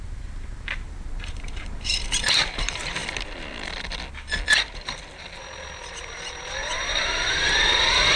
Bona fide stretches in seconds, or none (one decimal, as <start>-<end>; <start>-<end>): 3.0-6.1